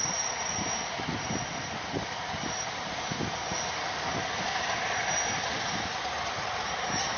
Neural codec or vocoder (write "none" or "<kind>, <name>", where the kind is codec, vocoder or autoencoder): none